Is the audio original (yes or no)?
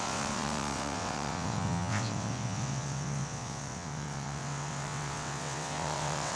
no